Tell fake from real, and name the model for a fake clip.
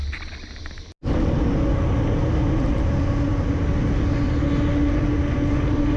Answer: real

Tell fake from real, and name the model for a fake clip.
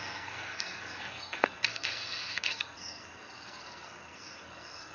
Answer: fake, codec, SNAC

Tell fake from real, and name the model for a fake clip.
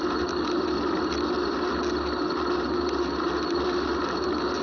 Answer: real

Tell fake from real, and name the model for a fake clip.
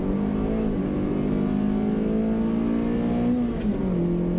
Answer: real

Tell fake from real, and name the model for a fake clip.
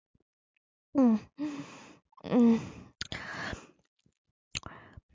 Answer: real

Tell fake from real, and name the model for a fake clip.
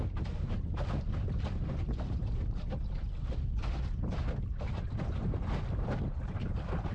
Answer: real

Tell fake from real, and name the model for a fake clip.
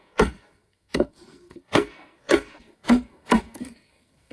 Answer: fake, codec, SNAC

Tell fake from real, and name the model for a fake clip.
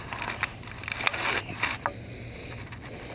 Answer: real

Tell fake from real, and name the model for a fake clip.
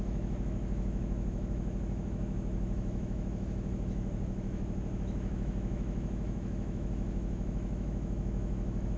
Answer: fake, autoencoder, DAC-VAE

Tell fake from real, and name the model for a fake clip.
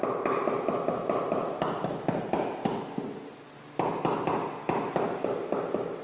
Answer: real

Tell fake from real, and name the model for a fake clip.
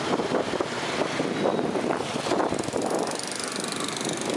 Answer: real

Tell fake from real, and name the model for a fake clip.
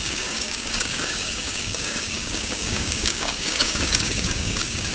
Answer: fake, codec, DAC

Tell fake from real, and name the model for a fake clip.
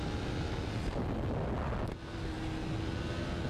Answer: real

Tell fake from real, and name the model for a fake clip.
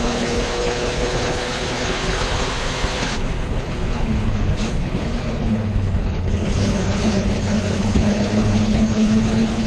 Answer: fake, codec, HILCodec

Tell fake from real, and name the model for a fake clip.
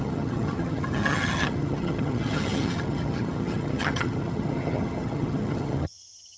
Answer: fake, vocoder, HiFi-GAN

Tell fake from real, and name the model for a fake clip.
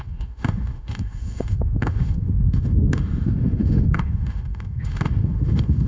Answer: fake, autoencoder, DAC-VAE